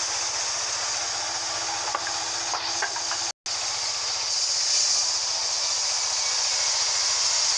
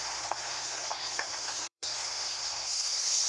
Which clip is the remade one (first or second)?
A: second